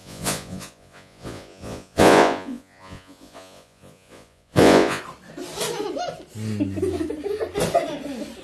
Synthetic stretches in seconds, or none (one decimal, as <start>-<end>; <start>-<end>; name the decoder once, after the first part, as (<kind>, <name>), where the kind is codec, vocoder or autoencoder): 0.0-5.0 (vocoder, Vocos)